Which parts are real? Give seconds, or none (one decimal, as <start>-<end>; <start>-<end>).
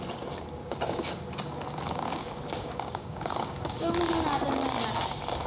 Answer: 0.0-0.6; 3.9-5.5